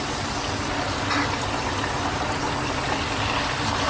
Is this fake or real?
real